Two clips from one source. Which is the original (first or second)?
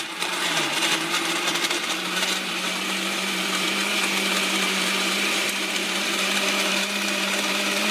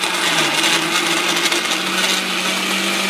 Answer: second